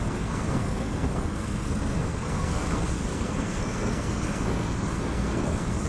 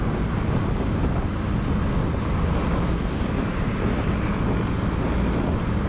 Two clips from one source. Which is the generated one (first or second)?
first